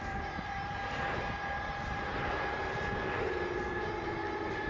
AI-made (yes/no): no